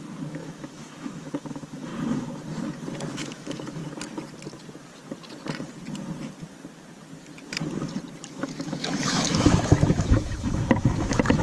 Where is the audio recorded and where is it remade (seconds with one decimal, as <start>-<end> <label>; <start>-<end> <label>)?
0.0-1.9 remade; 1.9-3.1 recorded; 3.1-3.8 remade; 3.8-8.3 recorded; 8.3-11.4 remade